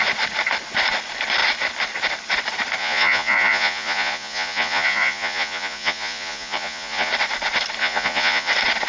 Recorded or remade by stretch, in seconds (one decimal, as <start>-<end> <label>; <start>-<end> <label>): 0.0-2.8 recorded; 2.8-7.1 remade; 7.1-7.8 recorded; 7.8-8.5 remade; 8.5-8.9 recorded